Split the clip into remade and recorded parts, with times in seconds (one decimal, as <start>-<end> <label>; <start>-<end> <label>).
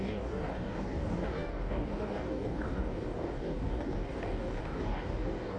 0.0-5.6 remade